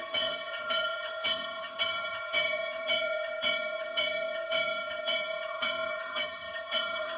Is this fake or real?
fake